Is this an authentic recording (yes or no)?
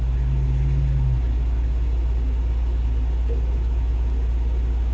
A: yes